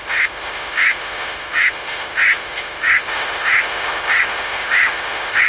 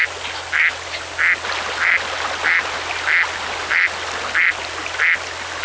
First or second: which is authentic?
second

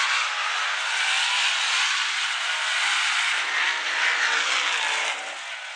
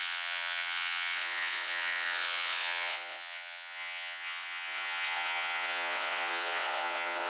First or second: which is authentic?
first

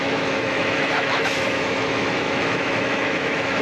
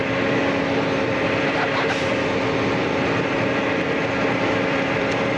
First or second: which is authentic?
second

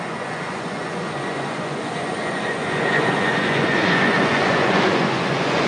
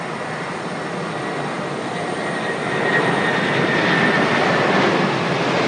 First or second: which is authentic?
second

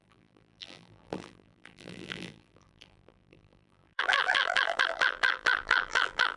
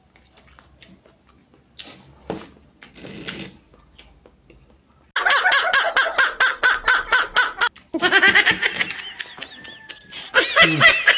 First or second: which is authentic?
second